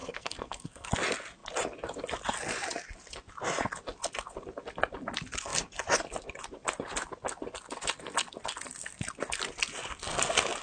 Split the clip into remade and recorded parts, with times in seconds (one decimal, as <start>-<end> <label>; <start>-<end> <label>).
0.0-0.9 remade; 0.9-10.6 recorded